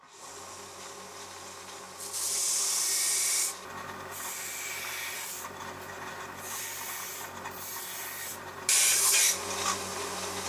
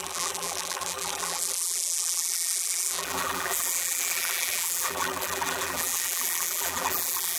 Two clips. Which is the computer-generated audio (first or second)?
second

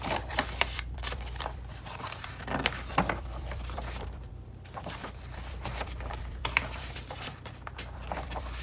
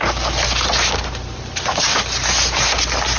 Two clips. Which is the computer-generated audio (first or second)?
first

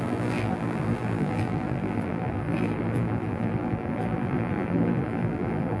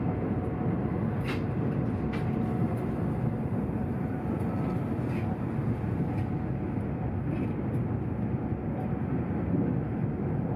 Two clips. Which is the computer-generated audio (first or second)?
first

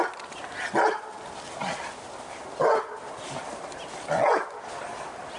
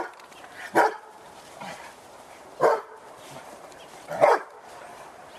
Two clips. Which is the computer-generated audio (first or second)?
second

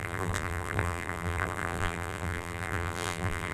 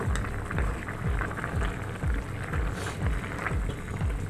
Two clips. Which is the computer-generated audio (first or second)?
first